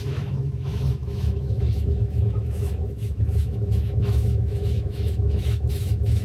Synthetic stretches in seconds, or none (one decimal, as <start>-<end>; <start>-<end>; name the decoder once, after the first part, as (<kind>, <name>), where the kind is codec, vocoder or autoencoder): 0.0-6.2 (autoencoder, DAC-VAE)